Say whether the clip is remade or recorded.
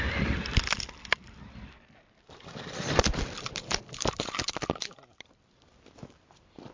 recorded